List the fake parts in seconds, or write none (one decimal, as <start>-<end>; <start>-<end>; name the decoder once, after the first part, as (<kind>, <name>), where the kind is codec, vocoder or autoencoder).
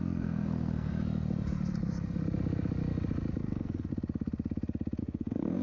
0.0-0.9 (codec, SNAC); 3.4-3.9; 5.0-5.6